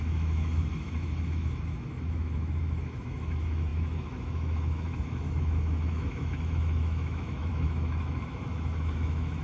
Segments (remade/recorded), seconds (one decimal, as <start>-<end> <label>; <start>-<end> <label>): 0.0-9.4 remade